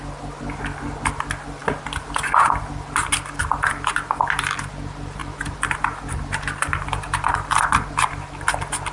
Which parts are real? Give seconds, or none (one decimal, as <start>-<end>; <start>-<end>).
0.0-3.4; 4.7-5.2; 8.5-8.9